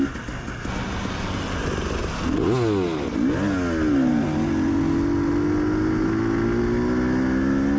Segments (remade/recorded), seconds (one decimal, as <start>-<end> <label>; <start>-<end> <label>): 0.0-7.8 recorded